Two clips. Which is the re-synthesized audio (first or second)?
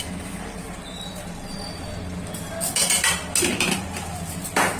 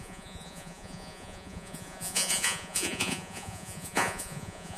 second